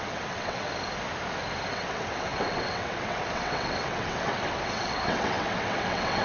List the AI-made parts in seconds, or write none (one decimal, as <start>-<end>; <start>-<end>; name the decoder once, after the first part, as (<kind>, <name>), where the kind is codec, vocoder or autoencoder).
0.0-0.7 (vocoder, WaveNeXt); 1.7-6.2